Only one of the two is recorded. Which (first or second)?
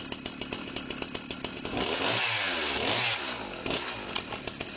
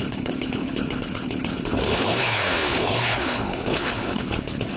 first